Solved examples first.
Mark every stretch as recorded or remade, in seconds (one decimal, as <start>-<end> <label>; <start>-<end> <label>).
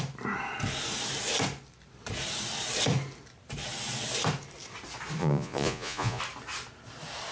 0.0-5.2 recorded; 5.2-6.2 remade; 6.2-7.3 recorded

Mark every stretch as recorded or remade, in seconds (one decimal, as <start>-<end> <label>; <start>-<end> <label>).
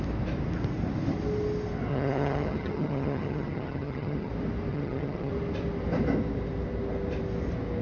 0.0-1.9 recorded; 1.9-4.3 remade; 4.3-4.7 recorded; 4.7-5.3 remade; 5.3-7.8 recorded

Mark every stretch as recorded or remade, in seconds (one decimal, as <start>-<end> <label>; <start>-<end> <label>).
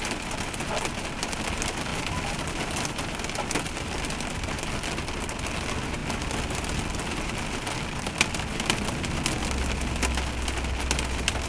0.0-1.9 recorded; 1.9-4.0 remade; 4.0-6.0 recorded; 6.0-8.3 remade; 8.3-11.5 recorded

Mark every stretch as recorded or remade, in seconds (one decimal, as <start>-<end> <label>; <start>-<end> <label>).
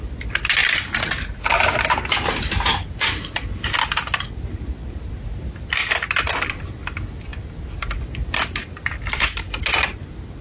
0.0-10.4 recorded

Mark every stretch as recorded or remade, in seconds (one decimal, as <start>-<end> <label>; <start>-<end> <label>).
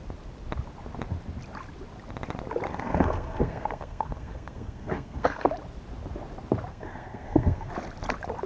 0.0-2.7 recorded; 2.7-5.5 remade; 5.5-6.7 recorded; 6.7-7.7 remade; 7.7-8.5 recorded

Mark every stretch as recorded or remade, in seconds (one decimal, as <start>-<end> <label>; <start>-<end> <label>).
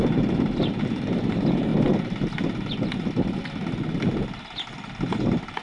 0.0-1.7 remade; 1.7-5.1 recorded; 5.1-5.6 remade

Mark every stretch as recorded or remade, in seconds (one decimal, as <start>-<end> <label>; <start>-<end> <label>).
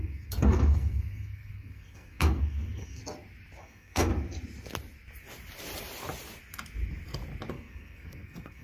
0.0-3.0 remade; 3.0-3.6 recorded; 3.6-4.1 remade; 4.1-7.5 recorded; 7.5-8.6 remade